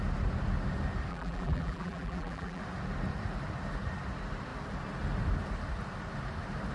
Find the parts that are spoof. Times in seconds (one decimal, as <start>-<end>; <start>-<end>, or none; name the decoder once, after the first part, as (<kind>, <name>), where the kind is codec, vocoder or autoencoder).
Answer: 1.1-2.6 (vocoder, BigVGAN v2)

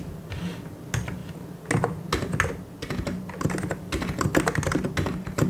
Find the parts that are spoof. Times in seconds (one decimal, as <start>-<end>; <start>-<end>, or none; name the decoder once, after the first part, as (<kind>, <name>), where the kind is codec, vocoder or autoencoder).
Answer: none